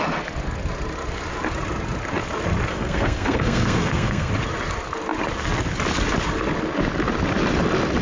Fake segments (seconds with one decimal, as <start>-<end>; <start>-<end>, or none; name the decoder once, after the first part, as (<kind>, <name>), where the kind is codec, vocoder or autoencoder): 2.7-4.3 (codec, SNAC)